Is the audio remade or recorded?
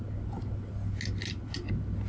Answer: recorded